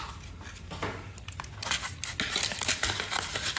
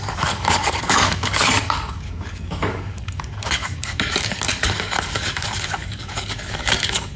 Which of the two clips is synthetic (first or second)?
second